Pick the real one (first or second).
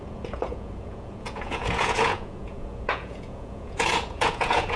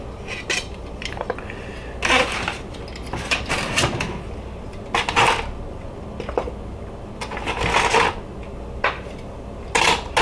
second